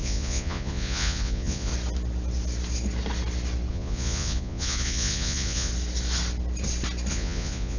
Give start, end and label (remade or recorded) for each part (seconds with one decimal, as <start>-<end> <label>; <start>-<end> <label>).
0.0-1.7 remade; 1.7-3.7 recorded; 3.7-5.7 remade; 5.7-7.1 recorded; 7.1-7.8 remade